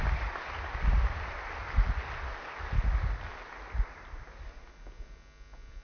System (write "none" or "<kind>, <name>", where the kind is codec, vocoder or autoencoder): none